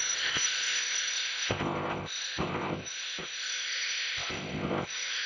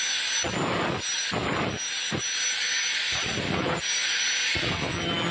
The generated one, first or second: first